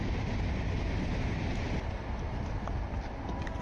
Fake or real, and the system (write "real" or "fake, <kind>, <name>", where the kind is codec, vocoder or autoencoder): real